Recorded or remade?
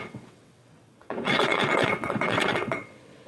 remade